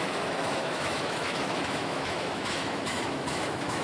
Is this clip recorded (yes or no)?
no